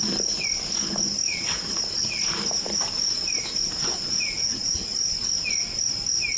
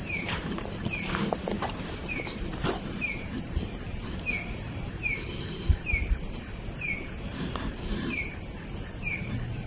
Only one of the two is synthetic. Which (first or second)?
second